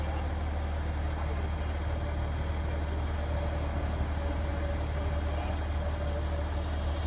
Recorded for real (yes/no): yes